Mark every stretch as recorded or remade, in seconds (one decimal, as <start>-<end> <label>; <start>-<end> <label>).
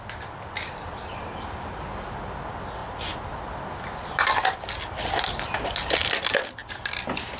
0.0-7.4 recorded